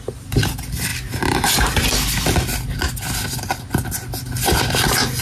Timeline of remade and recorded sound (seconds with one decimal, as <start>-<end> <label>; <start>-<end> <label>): 0.0-5.2 recorded